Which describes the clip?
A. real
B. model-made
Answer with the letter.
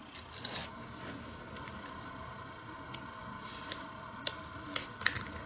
A